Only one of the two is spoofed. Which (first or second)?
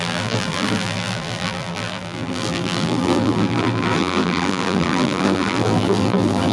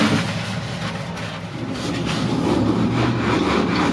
first